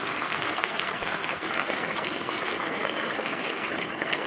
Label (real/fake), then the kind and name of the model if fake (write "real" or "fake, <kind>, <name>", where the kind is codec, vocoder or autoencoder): fake, codec, SNAC